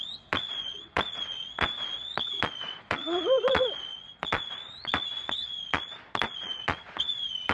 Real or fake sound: fake